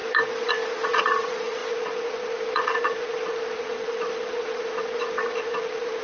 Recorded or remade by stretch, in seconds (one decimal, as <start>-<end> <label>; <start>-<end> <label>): 0.0-6.0 remade